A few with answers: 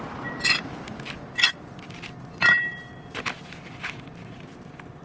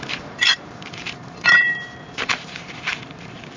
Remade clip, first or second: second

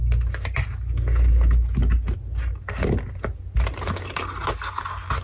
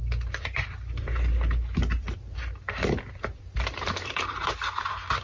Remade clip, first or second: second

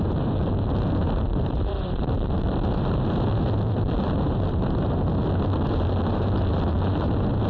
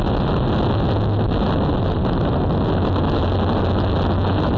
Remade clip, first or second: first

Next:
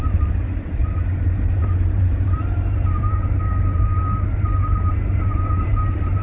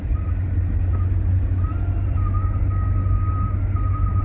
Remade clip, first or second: first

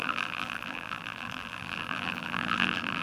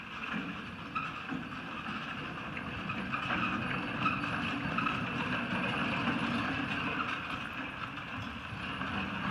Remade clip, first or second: first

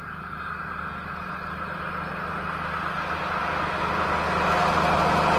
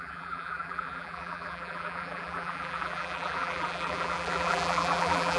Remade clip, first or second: second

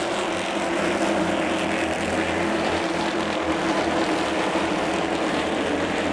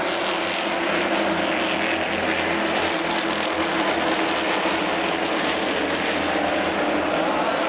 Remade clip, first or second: first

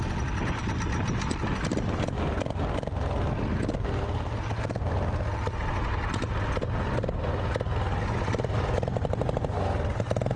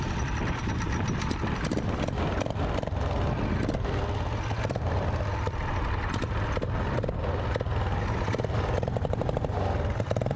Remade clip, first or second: second